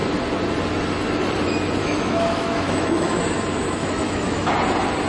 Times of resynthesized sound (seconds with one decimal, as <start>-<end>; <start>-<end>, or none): 1.8-3.2; 3.8-4.5

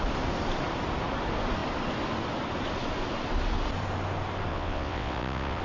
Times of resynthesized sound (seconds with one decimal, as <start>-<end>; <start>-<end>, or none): 4.5-5.6

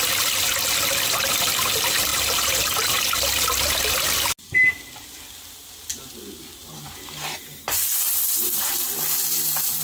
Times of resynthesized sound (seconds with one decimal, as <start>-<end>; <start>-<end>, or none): 2.1-3.0; 6.6-8.7

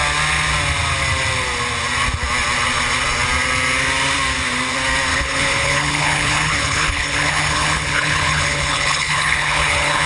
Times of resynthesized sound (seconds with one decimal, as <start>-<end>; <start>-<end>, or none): 5.1-10.1